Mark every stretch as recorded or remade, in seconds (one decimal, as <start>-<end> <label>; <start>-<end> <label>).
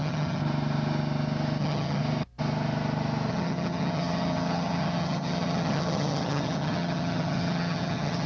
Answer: 0.0-0.4 remade; 0.4-1.6 recorded; 1.6-2.0 remade; 2.0-3.3 recorded; 3.3-8.3 remade